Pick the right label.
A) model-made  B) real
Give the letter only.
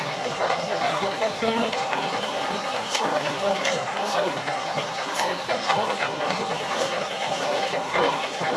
A